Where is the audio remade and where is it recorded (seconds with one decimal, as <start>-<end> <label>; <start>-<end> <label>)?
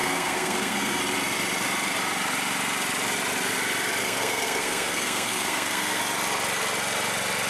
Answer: 0.0-1.0 remade; 1.0-4.0 recorded; 4.0-6.0 remade; 6.0-7.5 recorded